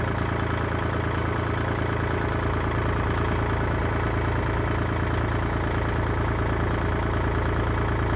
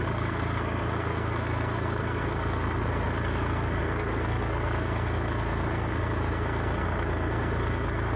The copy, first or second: second